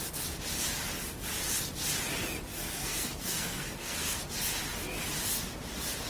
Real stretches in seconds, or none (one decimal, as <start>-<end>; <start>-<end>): 0.0-2.5; 4.2-6.1